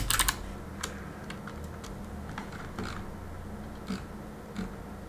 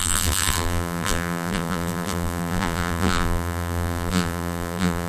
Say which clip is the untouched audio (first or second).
first